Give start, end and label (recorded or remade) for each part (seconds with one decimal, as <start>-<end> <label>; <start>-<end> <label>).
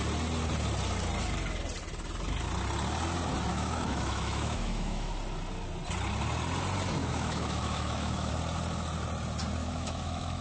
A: 0.0-3.5 recorded; 3.5-5.1 remade; 5.1-7.0 recorded; 7.0-8.3 remade; 8.3-9.6 recorded; 9.6-10.4 remade